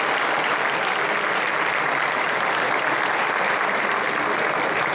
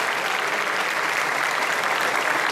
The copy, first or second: second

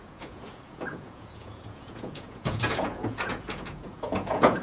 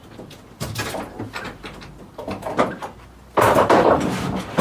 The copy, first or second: first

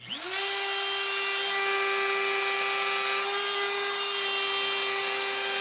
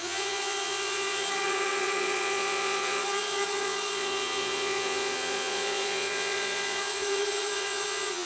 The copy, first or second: second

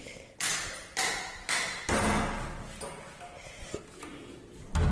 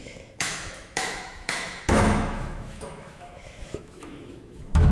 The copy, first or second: second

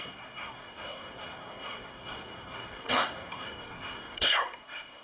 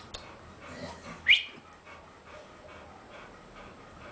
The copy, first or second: first